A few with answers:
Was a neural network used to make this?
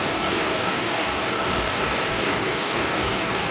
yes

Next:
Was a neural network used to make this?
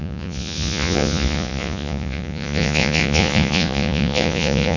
yes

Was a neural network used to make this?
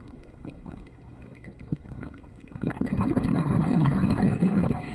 yes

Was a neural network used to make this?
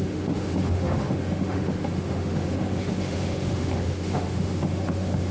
yes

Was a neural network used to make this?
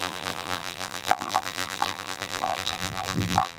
yes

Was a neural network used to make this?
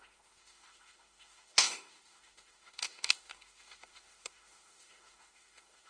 yes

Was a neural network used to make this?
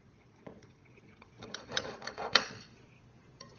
yes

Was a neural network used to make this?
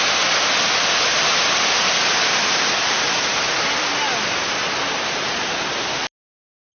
no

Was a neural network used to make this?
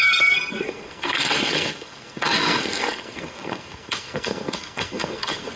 yes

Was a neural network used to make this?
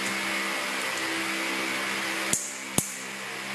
no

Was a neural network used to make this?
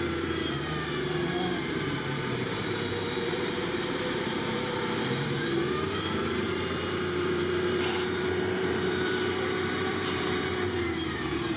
yes